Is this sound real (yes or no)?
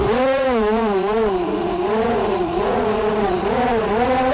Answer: no